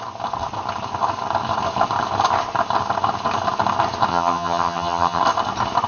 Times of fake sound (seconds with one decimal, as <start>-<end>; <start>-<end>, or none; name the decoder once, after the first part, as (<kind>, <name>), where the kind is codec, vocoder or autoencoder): 4.1-5.2 (vocoder, HiFi-GAN)